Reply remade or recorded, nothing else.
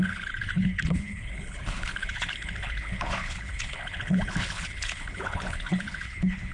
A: remade